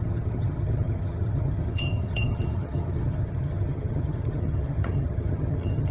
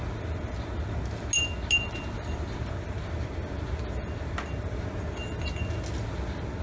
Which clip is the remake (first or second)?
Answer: first